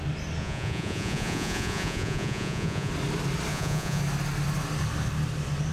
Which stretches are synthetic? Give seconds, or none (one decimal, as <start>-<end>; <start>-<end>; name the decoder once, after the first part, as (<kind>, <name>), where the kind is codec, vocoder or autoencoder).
0.4-2.9 (vocoder, Vocos); 3.5-4.0